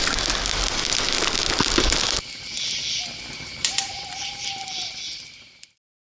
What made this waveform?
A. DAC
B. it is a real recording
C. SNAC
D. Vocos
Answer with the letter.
B